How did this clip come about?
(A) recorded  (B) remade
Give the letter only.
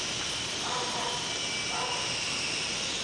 A